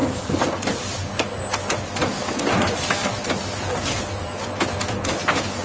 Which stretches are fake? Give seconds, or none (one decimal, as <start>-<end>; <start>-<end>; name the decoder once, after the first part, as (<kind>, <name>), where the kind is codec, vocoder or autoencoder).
0.0-1.5 (vocoder, BigVGAN v2); 3.0-4.0